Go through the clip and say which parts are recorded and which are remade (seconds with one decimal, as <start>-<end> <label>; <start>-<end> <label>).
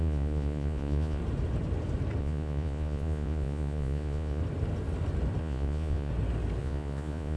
0.0-1.2 remade; 1.2-2.2 recorded; 2.2-4.4 remade; 4.4-5.4 recorded; 5.4-6.1 remade; 6.1-6.6 recorded; 6.6-7.4 remade